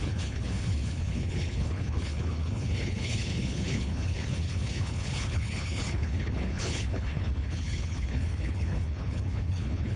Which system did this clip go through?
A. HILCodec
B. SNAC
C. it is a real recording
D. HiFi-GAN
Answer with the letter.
A